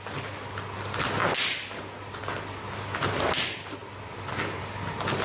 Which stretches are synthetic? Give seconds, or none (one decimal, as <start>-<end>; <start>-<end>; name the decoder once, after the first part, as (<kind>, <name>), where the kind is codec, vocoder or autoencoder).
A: none